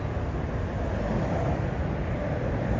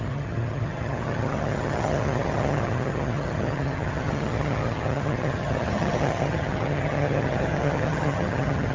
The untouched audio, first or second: first